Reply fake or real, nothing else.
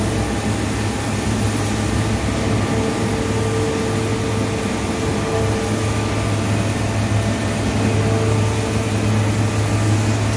real